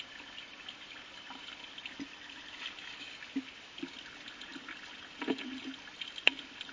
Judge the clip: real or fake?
real